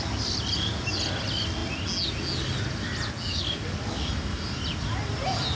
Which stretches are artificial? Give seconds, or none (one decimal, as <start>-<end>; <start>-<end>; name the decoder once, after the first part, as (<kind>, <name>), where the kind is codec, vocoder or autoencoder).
3.3-4.1 (codec, DAC)